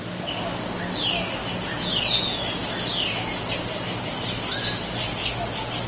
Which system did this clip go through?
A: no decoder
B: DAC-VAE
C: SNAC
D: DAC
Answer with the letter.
A